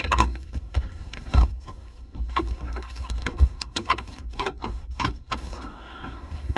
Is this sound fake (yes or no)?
yes